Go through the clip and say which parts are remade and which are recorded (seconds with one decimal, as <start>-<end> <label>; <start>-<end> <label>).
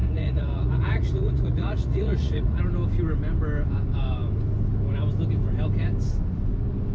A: 0.0-2.6 remade; 2.6-6.9 recorded